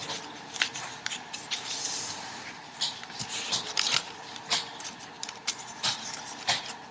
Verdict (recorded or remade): remade